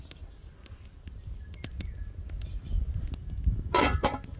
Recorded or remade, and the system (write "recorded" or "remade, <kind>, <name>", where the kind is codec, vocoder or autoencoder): recorded